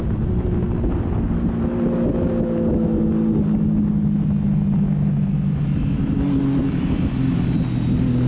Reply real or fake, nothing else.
real